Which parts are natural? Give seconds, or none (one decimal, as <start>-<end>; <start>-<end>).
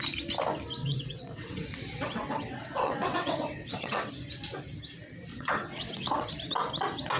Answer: 0.0-0.8; 4.1-5.3; 6.3-7.2